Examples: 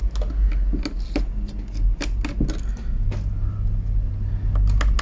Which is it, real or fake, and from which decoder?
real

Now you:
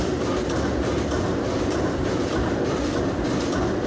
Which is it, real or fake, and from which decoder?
real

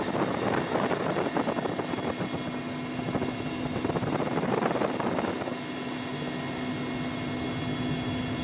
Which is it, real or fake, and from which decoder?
real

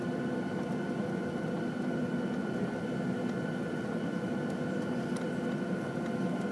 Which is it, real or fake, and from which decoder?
real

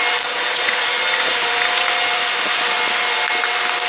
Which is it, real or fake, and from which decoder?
real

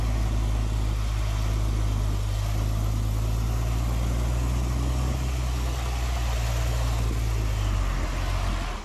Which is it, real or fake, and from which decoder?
real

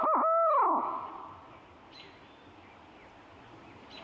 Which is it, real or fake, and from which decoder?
real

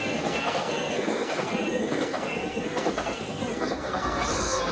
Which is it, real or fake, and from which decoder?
fake, codec, SNAC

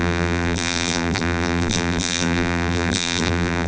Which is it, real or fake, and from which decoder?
fake, vocoder, BigVGAN v2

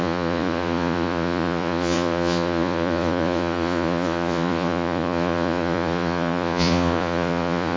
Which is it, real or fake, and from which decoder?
fake, vocoder, Vocos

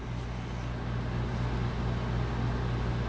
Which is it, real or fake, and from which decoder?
real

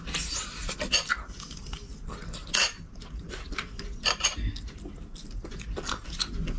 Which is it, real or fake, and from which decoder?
real